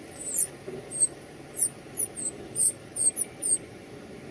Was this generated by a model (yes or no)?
yes